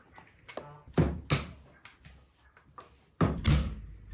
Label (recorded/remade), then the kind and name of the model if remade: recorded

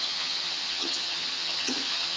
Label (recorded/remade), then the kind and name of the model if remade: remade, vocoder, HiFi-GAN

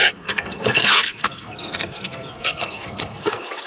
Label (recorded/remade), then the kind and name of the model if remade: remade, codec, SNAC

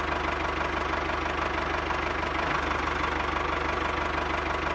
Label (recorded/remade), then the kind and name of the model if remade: recorded